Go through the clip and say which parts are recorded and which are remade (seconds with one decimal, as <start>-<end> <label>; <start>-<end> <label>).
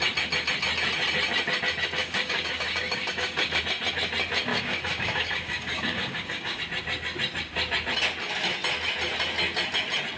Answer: 0.0-2.0 recorded; 2.0-3.6 remade; 3.6-4.5 recorded; 4.5-6.6 remade; 6.6-10.2 recorded